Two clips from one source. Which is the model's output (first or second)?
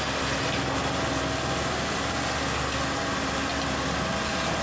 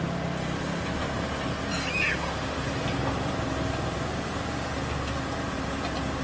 second